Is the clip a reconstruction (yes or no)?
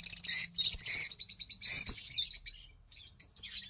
no